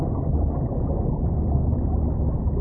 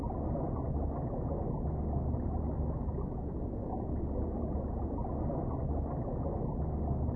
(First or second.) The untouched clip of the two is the second